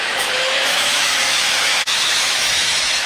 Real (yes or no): no